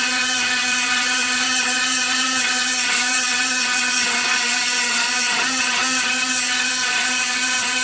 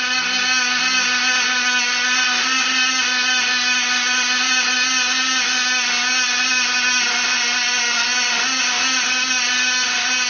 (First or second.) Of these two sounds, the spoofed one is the first